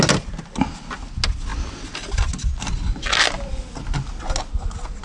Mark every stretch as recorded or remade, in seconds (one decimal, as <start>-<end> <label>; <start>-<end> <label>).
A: 0.0-5.0 recorded